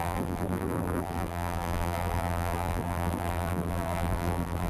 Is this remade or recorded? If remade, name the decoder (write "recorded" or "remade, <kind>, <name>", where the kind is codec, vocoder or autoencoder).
remade, vocoder, BigVGAN v2